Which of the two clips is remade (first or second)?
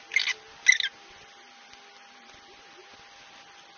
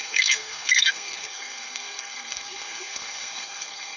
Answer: second